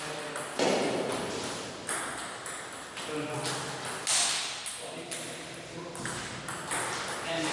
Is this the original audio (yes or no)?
yes